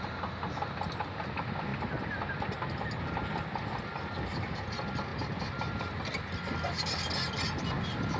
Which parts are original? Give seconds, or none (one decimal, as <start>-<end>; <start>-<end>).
0.0-8.2